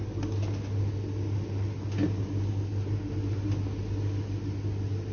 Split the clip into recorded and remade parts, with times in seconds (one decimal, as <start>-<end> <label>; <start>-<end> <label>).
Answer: 0.0-5.1 recorded